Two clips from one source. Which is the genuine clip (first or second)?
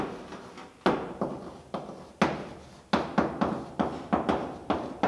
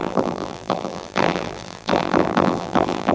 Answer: first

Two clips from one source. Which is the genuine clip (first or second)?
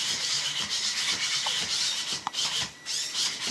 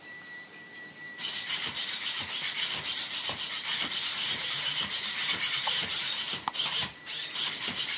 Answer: first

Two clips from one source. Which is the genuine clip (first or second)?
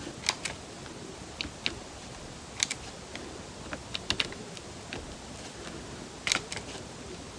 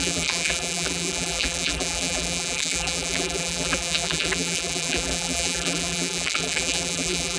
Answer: first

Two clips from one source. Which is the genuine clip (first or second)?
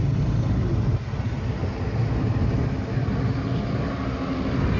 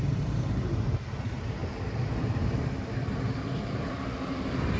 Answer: first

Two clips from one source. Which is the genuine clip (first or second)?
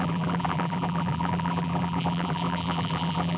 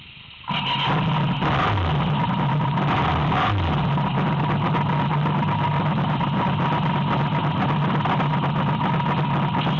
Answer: second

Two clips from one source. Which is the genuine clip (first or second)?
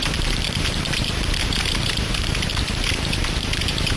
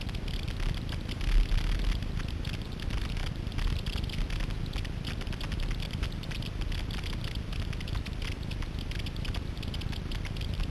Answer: second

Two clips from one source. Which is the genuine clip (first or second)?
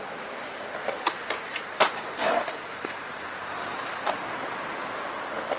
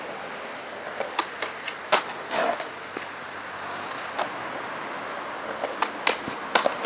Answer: second